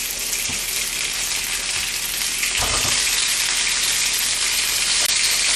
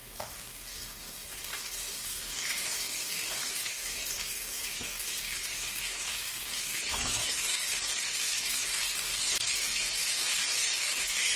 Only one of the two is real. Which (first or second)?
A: first